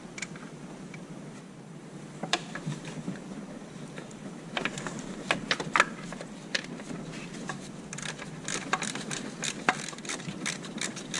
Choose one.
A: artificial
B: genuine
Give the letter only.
A